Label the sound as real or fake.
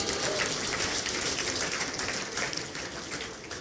real